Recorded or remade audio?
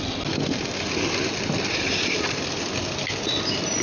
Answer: recorded